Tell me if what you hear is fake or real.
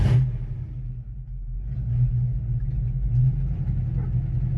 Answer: real